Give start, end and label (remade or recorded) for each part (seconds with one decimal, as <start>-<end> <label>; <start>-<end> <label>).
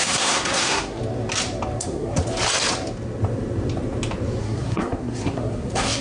0.0-1.0 remade; 1.0-1.8 recorded; 1.8-2.2 remade; 2.2-4.4 recorded; 4.4-6.0 remade